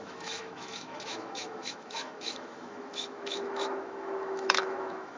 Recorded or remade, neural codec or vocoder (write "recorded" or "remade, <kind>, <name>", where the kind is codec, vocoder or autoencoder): remade, autoencoder, DAC-VAE